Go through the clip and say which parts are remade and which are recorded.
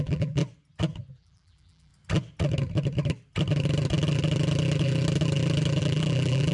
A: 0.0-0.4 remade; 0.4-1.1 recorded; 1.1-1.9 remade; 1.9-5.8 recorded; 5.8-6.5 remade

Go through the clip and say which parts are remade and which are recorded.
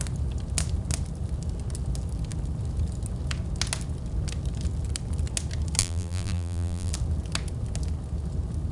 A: 0.0-5.8 recorded; 5.8-6.9 remade; 6.9-8.7 recorded